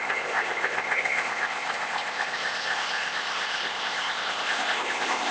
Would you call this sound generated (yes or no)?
yes